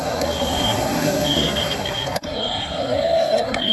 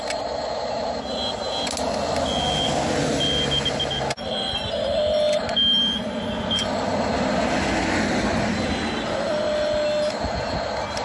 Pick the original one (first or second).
second